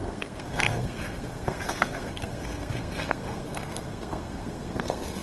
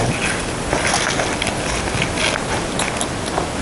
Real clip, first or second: second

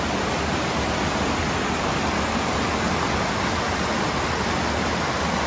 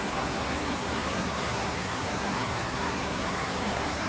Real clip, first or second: first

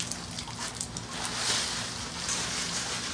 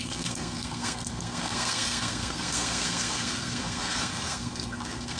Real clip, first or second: first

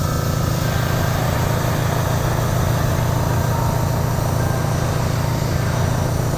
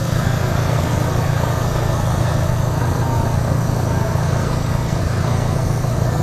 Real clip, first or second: first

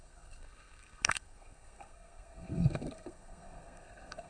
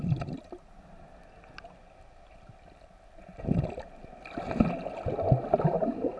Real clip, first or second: second